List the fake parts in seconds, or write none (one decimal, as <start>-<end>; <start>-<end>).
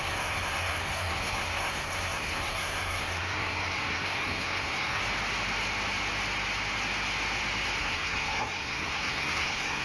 0.0-5.0; 7.8-9.8